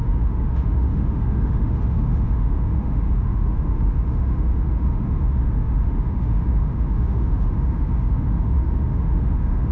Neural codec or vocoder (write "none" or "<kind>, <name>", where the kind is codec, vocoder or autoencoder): autoencoder, DAC-VAE